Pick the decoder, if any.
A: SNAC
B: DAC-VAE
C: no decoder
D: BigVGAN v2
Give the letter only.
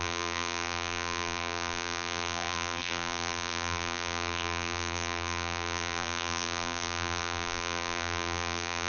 D